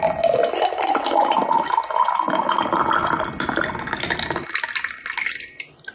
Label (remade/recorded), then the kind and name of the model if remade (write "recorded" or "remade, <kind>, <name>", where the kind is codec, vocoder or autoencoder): recorded